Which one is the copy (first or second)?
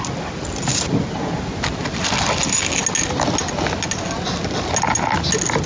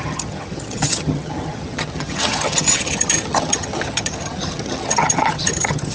second